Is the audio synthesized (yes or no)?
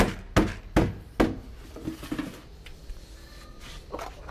no